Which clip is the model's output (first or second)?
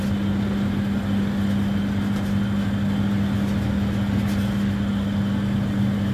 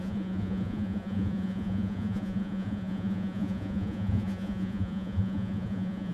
second